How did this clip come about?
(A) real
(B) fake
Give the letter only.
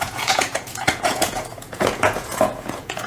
B